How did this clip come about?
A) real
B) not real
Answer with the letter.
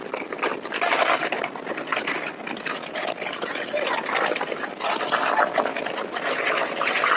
A